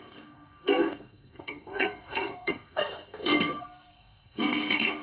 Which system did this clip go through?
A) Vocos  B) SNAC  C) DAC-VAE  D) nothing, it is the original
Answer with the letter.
B